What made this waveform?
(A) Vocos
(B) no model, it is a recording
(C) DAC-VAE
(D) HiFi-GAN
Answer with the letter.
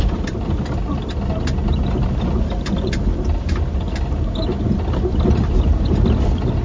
B